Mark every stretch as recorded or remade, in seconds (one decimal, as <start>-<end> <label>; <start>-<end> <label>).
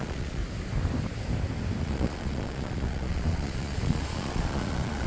0.0-0.4 remade; 0.4-1.8 recorded; 1.8-5.1 remade